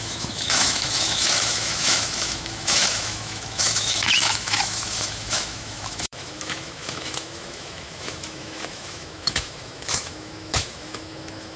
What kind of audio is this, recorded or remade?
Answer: remade